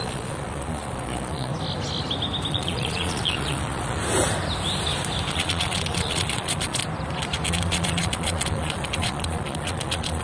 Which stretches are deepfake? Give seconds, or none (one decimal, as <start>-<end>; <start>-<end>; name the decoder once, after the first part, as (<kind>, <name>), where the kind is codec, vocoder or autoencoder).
0.0-1.5 (vocoder, Vocos); 2.5-4.0; 5.3-6.8; 7.5-10.2